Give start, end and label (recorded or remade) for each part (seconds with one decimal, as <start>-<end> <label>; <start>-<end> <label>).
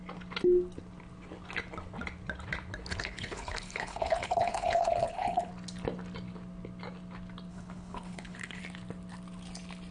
0.0-2.9 recorded; 2.9-5.5 remade; 5.5-7.5 recorded; 7.5-8.6 remade; 8.6-9.9 recorded